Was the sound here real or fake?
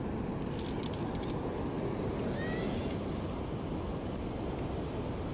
real